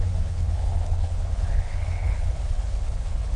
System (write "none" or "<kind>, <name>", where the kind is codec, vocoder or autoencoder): codec, HILCodec